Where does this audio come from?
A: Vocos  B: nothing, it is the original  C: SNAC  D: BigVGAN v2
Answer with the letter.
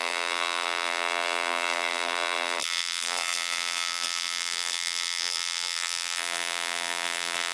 D